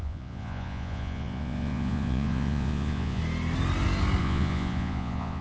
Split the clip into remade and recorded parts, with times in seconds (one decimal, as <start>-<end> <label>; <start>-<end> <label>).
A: 0.0-3.2 remade; 3.2-4.2 recorded; 4.2-5.4 remade